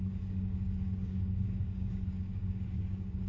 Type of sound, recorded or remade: remade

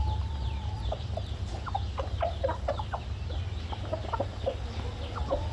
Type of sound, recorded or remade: recorded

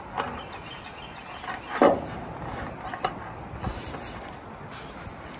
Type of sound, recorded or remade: recorded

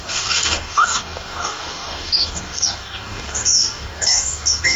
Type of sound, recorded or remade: remade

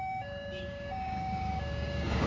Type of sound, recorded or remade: remade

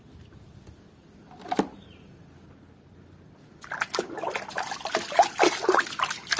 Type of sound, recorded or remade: recorded